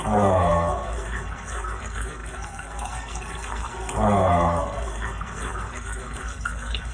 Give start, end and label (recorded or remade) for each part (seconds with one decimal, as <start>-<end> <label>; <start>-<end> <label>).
0.0-6.9 remade